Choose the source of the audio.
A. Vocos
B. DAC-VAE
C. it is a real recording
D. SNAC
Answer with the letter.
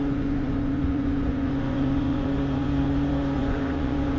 A